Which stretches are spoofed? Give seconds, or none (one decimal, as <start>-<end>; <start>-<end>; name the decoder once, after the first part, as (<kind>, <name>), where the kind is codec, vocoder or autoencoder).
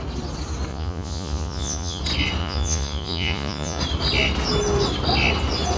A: 0.7-2.0 (vocoder, Vocos); 2.4-3.8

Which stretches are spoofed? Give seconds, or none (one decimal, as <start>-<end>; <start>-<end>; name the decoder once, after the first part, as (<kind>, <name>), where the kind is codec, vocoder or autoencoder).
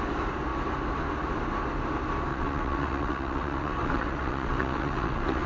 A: 2.3-5.5 (vocoder, WaveNeXt)